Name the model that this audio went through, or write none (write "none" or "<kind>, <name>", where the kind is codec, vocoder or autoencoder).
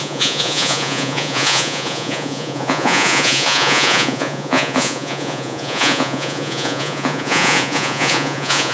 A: vocoder, Vocos